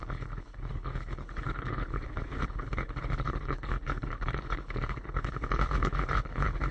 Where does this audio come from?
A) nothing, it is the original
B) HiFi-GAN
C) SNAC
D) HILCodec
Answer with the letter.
D